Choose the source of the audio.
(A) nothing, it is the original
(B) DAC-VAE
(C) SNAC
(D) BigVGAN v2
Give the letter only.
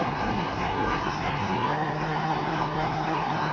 C